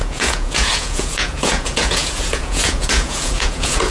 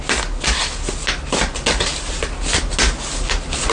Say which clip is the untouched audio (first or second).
second